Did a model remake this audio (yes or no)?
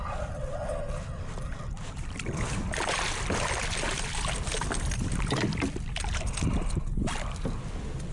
no